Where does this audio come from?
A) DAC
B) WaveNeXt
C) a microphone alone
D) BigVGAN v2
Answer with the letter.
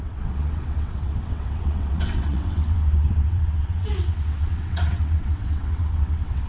B